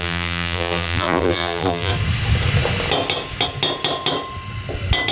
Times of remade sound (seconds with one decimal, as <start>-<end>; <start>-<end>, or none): 0.0-1.9